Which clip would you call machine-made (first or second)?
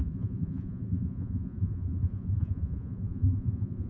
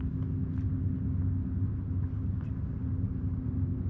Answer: first